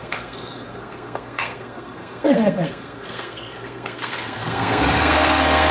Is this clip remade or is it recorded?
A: remade